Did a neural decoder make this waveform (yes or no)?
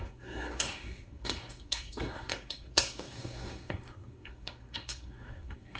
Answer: yes